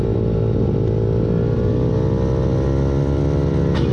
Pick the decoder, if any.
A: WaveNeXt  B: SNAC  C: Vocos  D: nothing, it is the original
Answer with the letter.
D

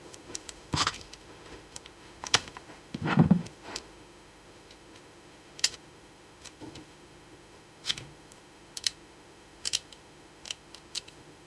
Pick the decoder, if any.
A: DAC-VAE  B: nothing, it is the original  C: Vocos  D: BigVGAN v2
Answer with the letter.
A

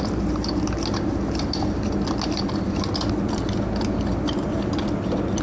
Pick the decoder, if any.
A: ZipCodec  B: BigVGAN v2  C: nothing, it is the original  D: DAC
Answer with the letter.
C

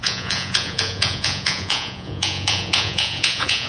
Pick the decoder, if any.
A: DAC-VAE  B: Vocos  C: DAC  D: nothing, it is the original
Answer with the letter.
B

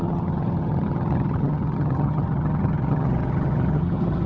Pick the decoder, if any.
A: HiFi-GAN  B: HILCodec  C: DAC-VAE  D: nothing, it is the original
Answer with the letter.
A